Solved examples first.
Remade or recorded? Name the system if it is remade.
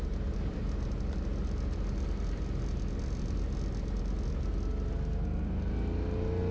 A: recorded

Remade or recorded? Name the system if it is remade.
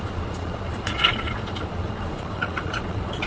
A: remade, vocoder, Vocos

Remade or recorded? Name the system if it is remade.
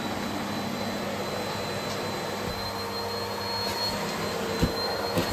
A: recorded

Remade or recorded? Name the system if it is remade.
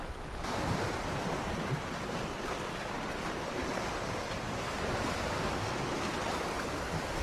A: recorded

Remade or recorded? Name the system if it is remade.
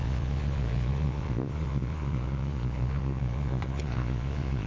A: remade, vocoder, Vocos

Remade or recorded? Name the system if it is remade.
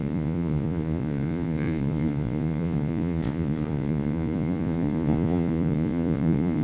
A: remade, vocoder, Vocos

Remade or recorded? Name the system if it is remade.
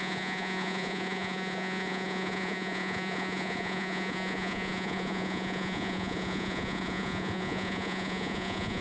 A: remade, vocoder, Vocos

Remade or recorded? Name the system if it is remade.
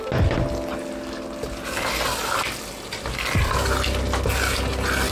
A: recorded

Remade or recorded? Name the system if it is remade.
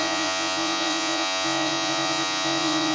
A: remade, vocoder, Vocos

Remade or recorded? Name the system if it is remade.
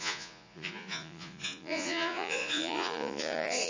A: remade, vocoder, Vocos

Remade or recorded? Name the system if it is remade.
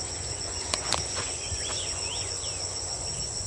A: remade, vocoder, Vocos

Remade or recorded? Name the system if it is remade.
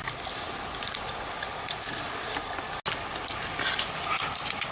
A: recorded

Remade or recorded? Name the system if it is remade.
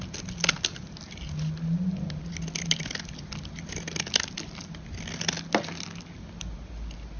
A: recorded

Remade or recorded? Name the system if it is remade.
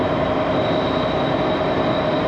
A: recorded